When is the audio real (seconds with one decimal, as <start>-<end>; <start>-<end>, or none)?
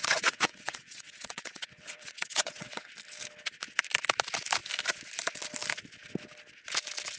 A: 2.9-7.2